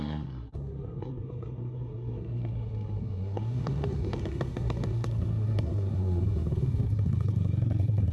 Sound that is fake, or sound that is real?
fake